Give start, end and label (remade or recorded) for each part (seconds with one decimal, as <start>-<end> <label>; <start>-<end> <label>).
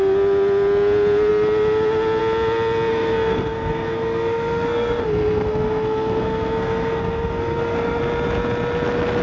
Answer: 0.0-2.9 recorded; 2.9-8.0 remade; 8.0-9.2 recorded